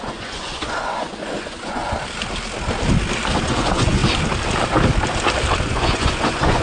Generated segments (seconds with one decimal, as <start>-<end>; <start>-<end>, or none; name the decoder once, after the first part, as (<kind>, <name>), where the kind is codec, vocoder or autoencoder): 0.0-1.8 (vocoder, Vocos); 3.4-4.0; 5.7-6.6